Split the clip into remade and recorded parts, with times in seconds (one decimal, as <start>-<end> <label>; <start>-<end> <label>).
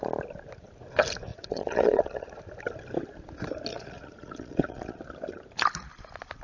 0.0-1.3 recorded; 1.3-2.4 remade; 2.4-3.7 recorded; 3.7-5.0 remade; 5.0-6.4 recorded